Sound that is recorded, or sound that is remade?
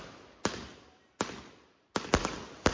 recorded